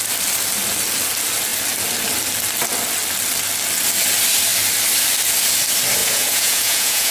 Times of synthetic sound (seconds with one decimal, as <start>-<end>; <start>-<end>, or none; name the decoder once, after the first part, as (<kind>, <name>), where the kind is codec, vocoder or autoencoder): 6.0-7.1 (vocoder, Vocos)